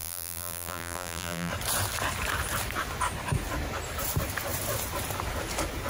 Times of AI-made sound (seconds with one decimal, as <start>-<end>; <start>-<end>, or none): 0.0-1.5